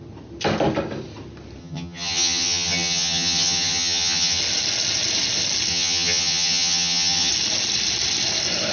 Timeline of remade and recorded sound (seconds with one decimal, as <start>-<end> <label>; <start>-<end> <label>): 0.0-1.6 recorded; 1.6-4.4 remade; 4.4-5.7 recorded; 5.7-7.3 remade; 7.3-8.7 recorded